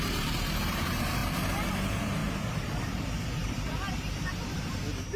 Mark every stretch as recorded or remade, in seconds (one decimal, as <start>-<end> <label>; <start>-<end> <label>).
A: 0.0-1.2 remade; 1.2-1.7 recorded; 1.7-5.2 remade